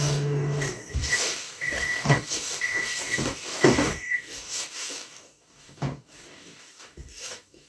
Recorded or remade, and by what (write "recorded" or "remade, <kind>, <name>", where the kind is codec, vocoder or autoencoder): remade, codec, DAC